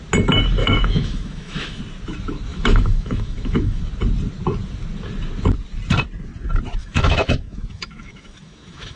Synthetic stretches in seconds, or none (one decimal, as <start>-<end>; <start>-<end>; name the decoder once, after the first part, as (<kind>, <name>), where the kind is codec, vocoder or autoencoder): 0.6-1.8 (autoencoder, DAC-VAE); 2.5-3.8; 6.8-9.0

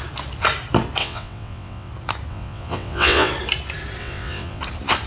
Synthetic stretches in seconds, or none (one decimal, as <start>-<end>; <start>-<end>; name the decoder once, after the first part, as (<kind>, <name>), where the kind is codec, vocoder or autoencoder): 1.0-1.9 (vocoder, WaveNeXt); 2.3-3.3; 4.0-4.6

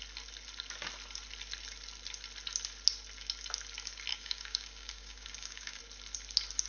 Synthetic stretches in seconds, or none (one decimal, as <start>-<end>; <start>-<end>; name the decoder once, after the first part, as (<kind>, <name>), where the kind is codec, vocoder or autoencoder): 4.1-5.8 (codec, DAC)

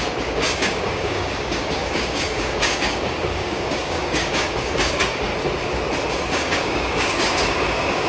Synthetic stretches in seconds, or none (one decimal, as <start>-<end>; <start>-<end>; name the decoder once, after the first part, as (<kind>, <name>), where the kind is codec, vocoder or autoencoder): 0.0-5.3 (codec, DAC); 6.1-8.1

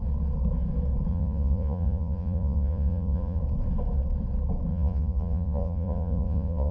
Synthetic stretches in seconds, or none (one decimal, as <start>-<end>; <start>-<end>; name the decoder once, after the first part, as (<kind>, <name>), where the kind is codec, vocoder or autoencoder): 1.1-3.4 (vocoder, Vocos); 4.7-6.7

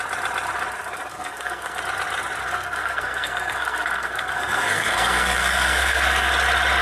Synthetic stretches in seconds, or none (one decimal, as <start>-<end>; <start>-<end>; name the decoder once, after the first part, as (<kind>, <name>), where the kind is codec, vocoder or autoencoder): 1.1-1.8 (codec, SNAC); 2.4-6.3